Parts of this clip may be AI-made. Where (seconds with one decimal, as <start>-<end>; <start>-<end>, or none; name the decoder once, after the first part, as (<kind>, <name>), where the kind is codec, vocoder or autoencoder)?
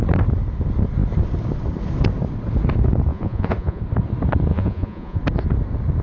3.1-3.8 (vocoder, Vocos); 4.5-5.2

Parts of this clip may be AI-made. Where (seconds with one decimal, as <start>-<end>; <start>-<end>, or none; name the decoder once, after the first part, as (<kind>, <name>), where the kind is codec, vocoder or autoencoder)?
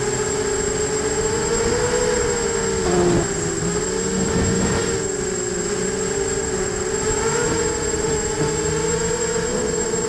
none